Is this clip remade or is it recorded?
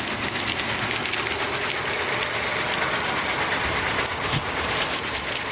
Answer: recorded